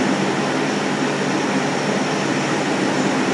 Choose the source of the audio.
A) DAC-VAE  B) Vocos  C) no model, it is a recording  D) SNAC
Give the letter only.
C